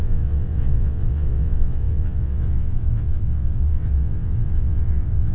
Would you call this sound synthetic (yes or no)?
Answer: yes